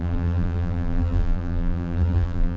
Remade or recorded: remade